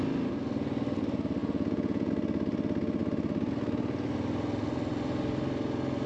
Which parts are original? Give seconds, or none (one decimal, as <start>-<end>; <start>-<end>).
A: 0.0-1.4; 2.1-6.1